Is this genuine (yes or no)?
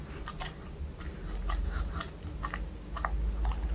yes